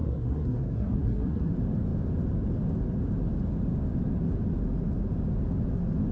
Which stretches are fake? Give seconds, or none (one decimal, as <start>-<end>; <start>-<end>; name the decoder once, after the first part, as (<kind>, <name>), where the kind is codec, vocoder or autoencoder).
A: 0.0-1.5 (codec, SNAC)